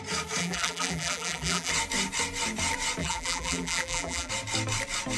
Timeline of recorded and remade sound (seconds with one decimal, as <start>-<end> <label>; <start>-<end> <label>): 0.0-0.4 recorded; 0.4-1.7 remade; 1.7-3.0 recorded; 3.0-4.3 remade; 4.3-5.2 recorded